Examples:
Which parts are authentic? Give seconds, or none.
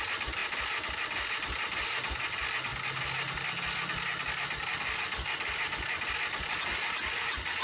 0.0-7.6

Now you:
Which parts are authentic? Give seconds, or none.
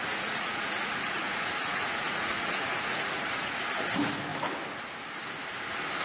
3.6-6.0